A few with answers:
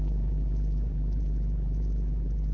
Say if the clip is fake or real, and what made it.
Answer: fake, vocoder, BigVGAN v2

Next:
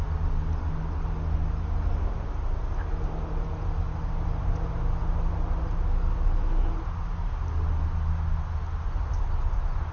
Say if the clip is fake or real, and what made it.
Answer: real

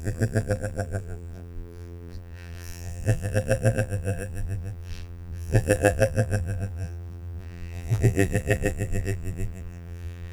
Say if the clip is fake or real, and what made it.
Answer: fake, vocoder, BigVGAN v2